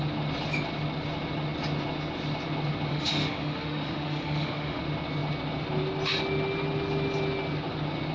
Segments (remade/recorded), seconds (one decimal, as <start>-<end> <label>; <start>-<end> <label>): 0.0-2.9 recorded; 2.9-4.8 remade; 4.8-8.1 recorded